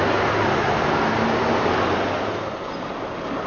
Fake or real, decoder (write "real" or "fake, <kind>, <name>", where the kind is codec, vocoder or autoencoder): real